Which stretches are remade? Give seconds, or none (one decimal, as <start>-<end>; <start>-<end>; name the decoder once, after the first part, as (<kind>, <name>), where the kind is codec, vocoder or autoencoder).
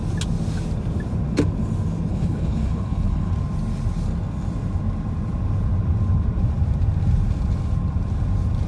2.1-3.3 (codec, HILCodec)